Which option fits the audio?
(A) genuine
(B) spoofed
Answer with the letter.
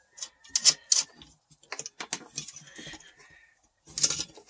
A